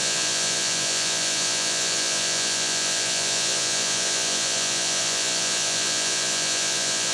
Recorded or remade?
remade